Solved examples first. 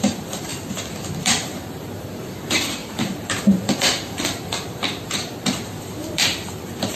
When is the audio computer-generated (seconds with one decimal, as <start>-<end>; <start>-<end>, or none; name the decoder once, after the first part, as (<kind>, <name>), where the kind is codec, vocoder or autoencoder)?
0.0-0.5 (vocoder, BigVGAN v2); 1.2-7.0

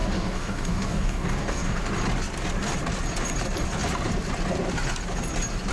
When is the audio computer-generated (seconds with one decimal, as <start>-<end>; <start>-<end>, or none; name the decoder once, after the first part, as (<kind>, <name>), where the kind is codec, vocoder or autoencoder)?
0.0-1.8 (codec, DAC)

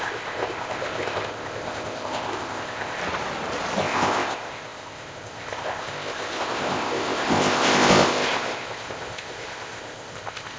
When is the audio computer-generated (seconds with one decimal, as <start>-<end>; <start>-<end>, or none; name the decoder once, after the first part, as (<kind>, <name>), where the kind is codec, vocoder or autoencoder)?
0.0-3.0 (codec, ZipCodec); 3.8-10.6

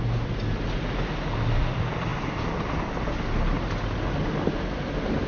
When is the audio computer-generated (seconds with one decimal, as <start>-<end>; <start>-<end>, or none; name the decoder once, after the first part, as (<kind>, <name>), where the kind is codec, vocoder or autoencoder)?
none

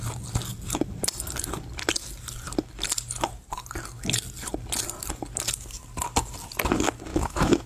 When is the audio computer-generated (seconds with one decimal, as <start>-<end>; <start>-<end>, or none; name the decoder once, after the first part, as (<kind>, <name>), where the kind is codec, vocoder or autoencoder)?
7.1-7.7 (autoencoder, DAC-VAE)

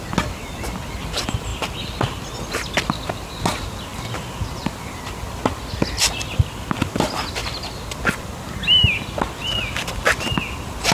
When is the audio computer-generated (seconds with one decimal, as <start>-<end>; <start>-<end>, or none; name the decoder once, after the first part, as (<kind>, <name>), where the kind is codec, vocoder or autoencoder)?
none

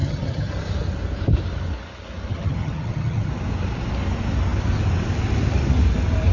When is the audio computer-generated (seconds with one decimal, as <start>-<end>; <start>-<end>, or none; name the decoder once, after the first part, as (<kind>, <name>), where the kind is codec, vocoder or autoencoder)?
0.0-0.5 (vocoder, HiFi-GAN); 2.3-3.3